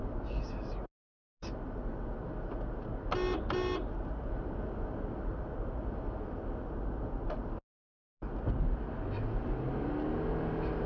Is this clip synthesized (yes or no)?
no